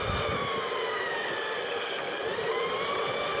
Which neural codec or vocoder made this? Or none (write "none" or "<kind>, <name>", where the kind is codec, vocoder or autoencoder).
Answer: none